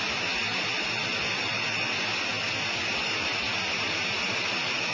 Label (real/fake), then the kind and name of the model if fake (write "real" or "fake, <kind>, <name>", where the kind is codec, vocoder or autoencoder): real